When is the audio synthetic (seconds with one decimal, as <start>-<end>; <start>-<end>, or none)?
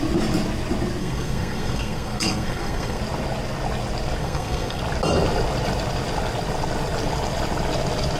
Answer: 1.0-3.0; 4.2-4.8